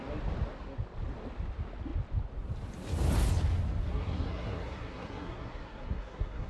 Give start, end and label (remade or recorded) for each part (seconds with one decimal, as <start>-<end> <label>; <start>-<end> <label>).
0.0-3.8 recorded; 3.8-6.5 remade